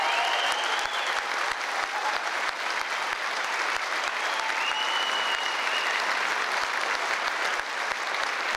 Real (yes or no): yes